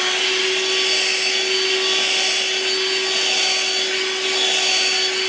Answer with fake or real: real